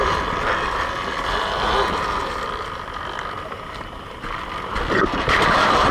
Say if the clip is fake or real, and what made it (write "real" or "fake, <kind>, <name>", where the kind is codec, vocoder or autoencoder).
fake, vocoder, BigVGAN v2